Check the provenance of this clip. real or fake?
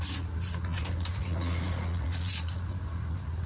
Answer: fake